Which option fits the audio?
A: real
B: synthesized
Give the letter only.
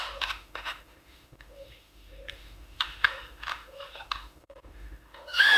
B